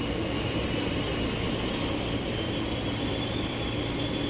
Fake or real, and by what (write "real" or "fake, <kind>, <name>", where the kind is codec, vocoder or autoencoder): real